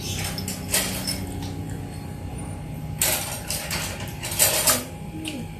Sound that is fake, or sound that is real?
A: real